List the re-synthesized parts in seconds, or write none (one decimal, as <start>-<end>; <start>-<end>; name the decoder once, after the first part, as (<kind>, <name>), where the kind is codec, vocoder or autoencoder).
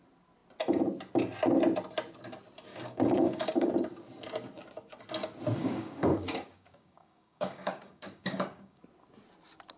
2.7-3.7 (codec, DAC); 5.6-8.8